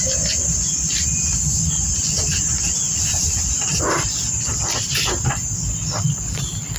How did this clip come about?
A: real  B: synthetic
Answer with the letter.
A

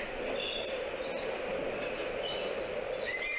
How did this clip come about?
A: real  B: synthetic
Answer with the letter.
A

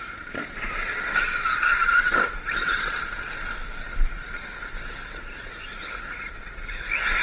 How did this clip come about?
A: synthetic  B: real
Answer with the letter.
B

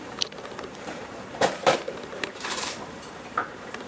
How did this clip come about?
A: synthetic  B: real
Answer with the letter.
A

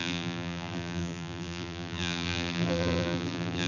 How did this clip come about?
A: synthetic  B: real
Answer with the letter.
A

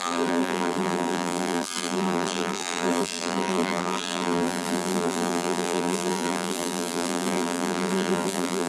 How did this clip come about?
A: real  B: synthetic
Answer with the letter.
B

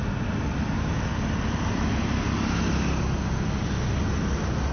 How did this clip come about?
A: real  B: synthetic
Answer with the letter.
A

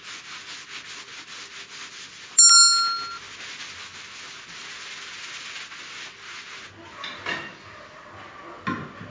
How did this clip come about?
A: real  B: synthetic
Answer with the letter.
A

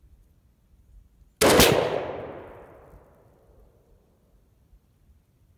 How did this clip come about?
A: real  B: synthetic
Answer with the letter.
A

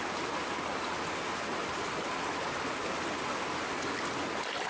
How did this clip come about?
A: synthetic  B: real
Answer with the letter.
B